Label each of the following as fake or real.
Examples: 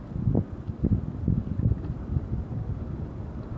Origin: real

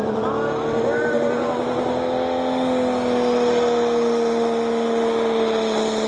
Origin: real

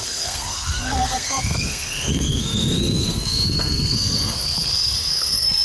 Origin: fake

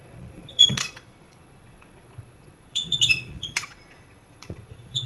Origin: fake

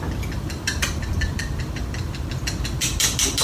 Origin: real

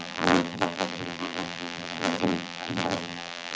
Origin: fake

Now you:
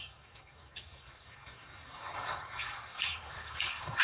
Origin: fake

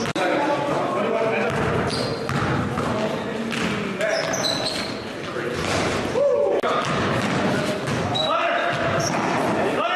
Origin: real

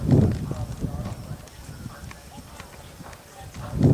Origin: real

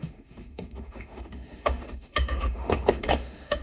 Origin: fake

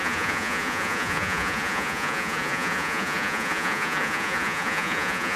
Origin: fake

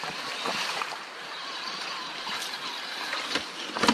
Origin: fake